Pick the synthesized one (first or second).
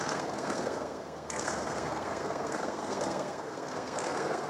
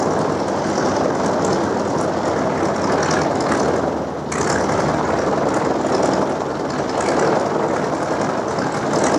first